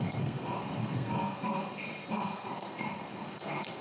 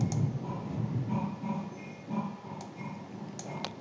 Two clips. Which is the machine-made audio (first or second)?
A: first